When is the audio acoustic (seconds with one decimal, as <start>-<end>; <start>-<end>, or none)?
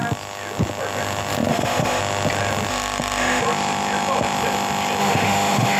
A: 0.0-1.5; 2.0-2.7; 3.4-5.0